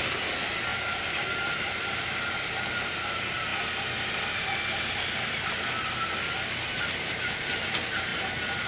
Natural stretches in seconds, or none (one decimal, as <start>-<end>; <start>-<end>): 0.0-0.7; 2.5-8.1